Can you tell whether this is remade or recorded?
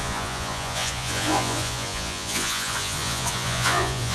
remade